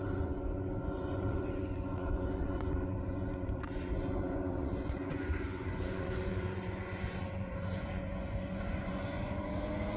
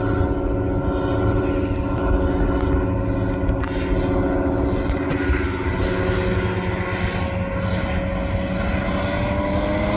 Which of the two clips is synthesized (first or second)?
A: first